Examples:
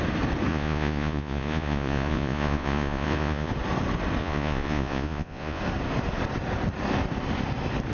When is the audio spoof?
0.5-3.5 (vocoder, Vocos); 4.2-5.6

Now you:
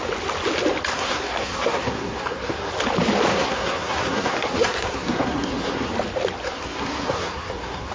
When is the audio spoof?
0.9-2.7 (codec, SNAC); 3.3-5.9; 6.4-7.9

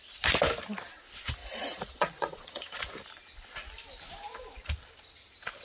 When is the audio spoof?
1.4-2.9 (vocoder, Vocos)